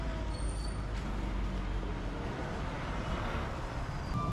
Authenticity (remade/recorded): recorded